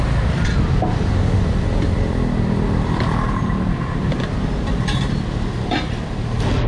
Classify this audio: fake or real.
real